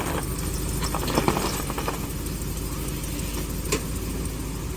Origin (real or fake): real